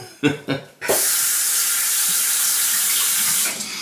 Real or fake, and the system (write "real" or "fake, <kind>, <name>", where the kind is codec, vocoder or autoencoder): fake, vocoder, BigVGAN v2